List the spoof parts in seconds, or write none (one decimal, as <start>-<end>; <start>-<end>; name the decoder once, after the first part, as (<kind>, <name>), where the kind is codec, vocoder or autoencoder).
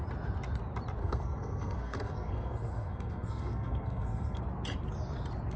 1.0-4.4 (codec, SNAC)